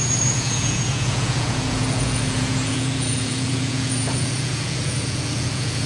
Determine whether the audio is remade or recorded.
remade